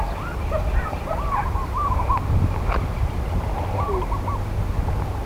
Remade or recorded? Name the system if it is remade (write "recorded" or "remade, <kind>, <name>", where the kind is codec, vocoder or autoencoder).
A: recorded